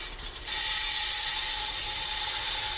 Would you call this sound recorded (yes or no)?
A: yes